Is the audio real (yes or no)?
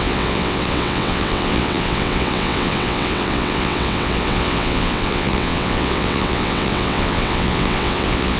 no